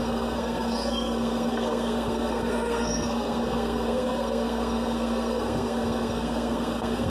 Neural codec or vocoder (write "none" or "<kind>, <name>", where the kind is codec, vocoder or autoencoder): codec, SNAC